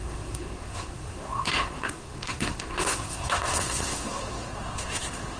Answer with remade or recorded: remade